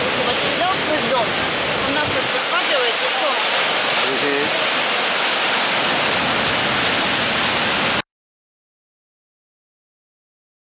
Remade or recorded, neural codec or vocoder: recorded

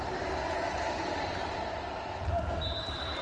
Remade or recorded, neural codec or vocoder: remade, vocoder, BigVGAN v2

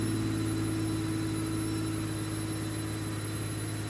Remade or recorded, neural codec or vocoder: recorded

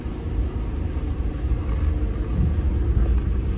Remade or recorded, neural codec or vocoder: recorded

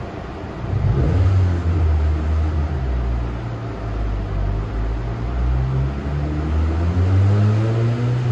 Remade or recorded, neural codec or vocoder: recorded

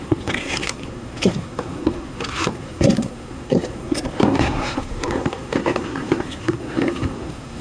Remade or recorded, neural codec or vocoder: remade, codec, SNAC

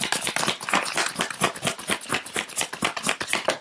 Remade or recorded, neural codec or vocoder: recorded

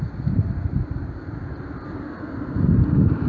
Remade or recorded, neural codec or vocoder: recorded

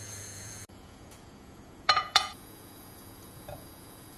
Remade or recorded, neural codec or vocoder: remade, vocoder, Vocos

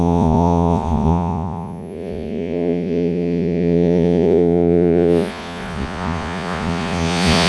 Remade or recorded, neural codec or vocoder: remade, vocoder, Vocos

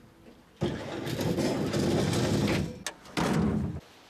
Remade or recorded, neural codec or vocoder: recorded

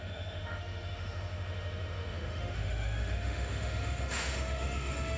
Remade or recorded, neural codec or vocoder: remade, autoencoder, DAC-VAE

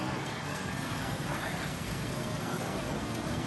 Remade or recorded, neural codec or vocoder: remade, codec, SNAC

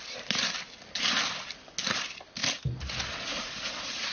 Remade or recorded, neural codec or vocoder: recorded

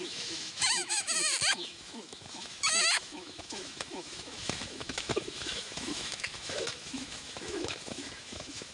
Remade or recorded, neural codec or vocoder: remade, autoencoder, DAC-VAE